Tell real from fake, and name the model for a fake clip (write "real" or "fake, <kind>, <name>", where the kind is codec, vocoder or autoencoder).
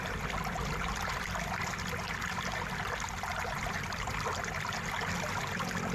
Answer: real